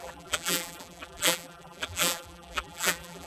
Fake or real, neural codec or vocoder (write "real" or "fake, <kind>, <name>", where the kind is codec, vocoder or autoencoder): fake, vocoder, BigVGAN v2